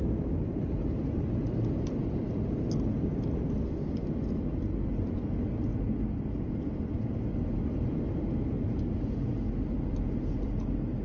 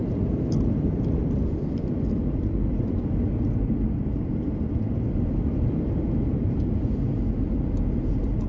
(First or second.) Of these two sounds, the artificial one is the second